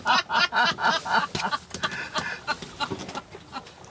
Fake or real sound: real